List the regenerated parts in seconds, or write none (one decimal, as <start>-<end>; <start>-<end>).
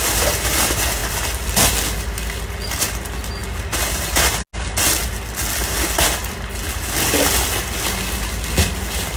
1.0-1.7